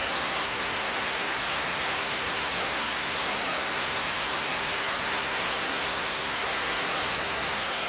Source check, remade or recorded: remade